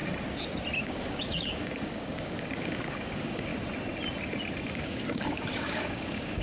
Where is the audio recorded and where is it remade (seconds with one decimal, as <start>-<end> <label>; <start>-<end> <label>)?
0.0-0.8 recorded; 0.8-3.5 remade; 3.5-4.6 recorded; 4.6-6.4 remade